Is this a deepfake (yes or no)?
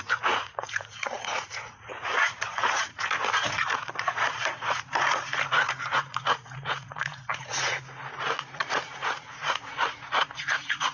yes